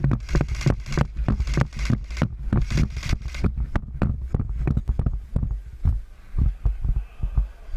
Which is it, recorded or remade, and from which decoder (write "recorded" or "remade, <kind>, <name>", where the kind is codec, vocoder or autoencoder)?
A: recorded